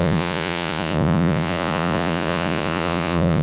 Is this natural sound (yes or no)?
no